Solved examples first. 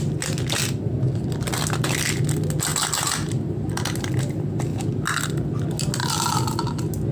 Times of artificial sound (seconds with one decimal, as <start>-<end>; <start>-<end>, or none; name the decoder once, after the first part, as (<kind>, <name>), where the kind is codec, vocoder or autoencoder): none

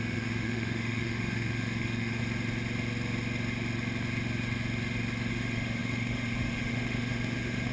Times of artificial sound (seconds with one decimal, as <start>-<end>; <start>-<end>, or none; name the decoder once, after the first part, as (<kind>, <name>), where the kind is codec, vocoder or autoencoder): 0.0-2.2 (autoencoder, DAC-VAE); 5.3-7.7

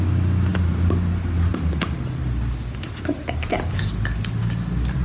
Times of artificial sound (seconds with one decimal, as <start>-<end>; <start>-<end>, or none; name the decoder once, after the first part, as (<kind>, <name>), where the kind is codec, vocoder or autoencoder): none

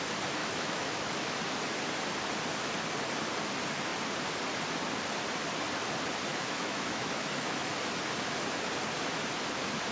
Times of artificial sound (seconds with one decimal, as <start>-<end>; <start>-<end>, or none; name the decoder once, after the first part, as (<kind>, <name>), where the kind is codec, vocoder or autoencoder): 0.4-1.4 (autoencoder, DAC-VAE); 6.3-7.7

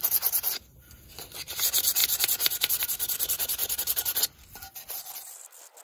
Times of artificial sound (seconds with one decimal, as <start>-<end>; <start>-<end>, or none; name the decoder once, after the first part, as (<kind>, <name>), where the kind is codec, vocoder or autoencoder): none

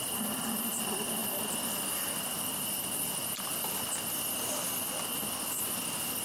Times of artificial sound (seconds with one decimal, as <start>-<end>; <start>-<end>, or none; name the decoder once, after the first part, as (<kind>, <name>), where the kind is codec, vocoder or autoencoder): none

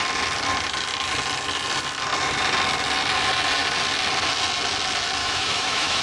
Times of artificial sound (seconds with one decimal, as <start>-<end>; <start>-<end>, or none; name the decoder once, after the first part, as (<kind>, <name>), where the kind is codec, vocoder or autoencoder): 5.2-6.0 (autoencoder, DAC-VAE)